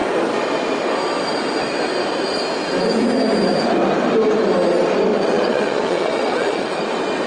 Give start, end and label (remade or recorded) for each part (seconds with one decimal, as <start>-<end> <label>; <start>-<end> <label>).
0.0-5.1 recorded; 5.1-6.8 remade; 6.8-7.3 recorded